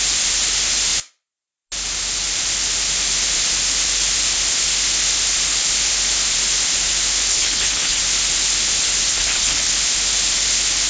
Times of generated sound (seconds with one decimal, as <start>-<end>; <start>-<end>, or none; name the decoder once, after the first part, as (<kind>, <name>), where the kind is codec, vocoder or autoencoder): 7.3-8.0 (codec, HILCodec); 9.1-9.7